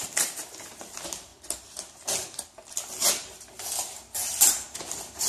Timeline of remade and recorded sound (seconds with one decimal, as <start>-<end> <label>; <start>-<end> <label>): 0.0-1.3 remade; 1.3-4.5 recorded; 4.5-5.3 remade